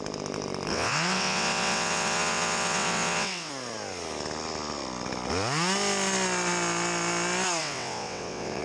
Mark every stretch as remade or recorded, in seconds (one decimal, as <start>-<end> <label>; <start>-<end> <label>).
0.0-0.7 recorded; 0.7-3.5 remade; 3.5-7.6 recorded; 7.6-8.6 remade